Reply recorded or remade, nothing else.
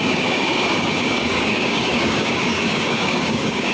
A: remade